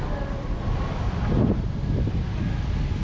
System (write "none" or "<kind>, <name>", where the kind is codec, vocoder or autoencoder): none